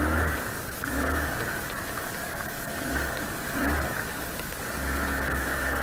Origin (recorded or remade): remade